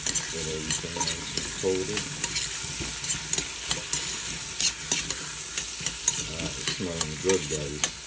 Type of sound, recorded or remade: recorded